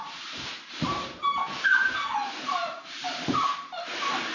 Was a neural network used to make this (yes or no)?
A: yes